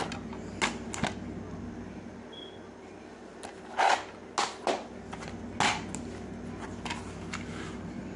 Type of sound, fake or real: real